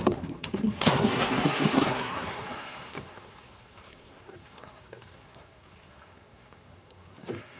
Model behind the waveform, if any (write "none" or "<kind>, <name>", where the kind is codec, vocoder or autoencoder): codec, SNAC